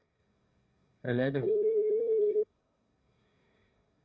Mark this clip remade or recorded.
remade